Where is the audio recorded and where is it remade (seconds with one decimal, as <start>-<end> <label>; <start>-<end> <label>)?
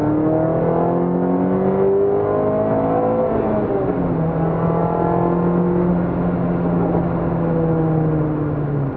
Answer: 0.0-9.0 recorded